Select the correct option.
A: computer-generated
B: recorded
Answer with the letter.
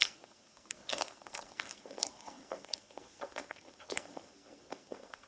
A